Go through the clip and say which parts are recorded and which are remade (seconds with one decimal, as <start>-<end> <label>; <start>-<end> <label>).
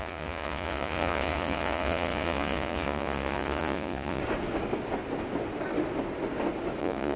0.0-4.2 remade; 4.2-6.8 recorded; 6.8-7.2 remade